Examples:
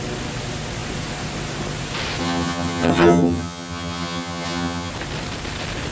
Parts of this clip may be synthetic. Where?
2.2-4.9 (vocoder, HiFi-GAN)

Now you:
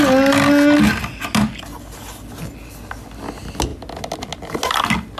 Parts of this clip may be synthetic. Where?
none

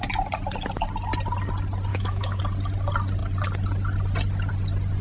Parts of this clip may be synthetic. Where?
1.9-2.4 (autoencoder, DAC-VAE)

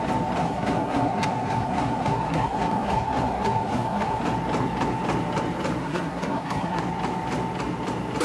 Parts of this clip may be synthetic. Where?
0.4-4.2 (codec, SNAC); 5.8-6.8

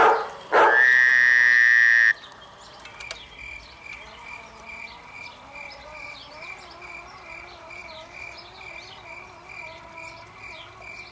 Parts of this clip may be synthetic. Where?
none

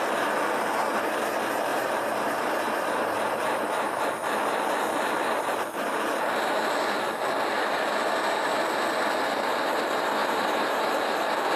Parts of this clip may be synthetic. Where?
1.7-4.0 (vocoder, BigVGAN v2); 10.2-10.9

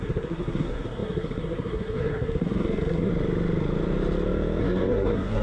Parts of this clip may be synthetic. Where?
0.0-3.1 (codec, SNAC); 4.6-5.4